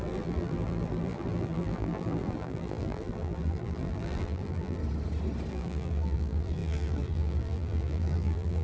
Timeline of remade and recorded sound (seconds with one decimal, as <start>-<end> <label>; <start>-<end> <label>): 0.0-4.8 remade; 4.8-5.5 recorded; 5.5-8.6 remade

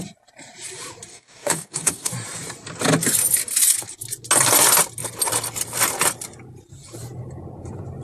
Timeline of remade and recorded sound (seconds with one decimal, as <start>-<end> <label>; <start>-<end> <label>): 0.0-1.1 recorded; 1.1-2.1 remade; 2.1-8.0 recorded

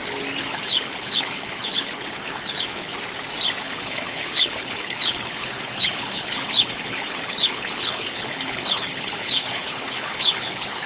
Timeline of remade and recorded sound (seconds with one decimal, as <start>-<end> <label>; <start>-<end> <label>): 0.0-0.5 recorded; 0.5-2.9 remade; 2.9-3.6 recorded; 3.6-10.9 remade

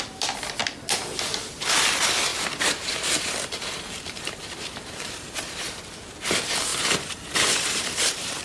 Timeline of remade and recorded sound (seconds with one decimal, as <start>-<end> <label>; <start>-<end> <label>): 0.0-2.3 recorded; 2.3-5.8 remade; 5.8-6.7 recorded; 6.7-8.4 remade